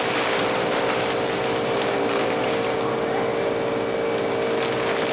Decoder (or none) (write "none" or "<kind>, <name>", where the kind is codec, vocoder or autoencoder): none